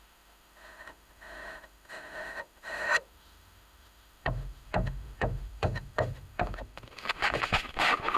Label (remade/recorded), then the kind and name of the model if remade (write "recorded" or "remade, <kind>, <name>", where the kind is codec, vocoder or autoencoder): remade, autoencoder, DAC-VAE